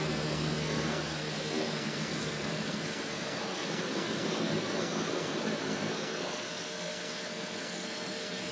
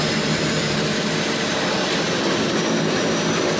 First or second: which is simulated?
first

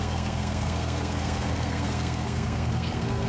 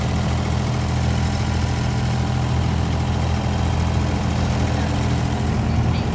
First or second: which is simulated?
first